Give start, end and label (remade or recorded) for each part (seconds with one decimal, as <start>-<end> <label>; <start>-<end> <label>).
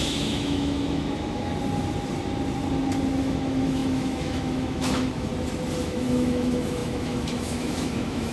0.0-1.5 remade; 1.5-3.2 recorded; 3.2-5.3 remade; 5.3-5.8 recorded; 5.8-8.3 remade